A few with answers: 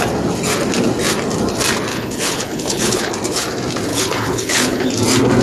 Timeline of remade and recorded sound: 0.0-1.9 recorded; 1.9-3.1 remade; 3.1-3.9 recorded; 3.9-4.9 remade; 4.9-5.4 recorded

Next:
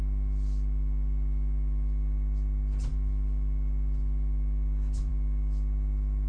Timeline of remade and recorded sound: 0.0-6.3 recorded

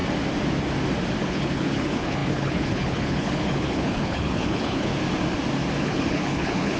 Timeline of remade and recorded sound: 0.0-1.2 recorded; 1.2-4.9 remade; 4.9-5.8 recorded; 5.8-6.8 remade

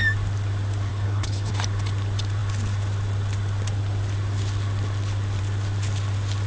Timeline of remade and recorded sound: 0.0-0.9 recorded; 0.9-1.5 remade; 1.5-6.5 recorded

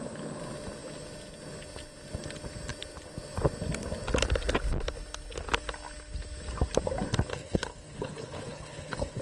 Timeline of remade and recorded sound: 0.0-7.3 recorded; 7.3-9.2 remade

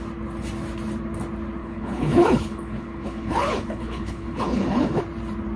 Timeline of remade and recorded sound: 0.0-1.6 recorded; 1.6-5.0 remade; 5.0-5.6 recorded